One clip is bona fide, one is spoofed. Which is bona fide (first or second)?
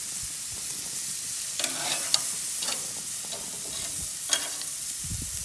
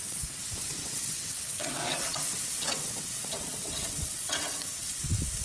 first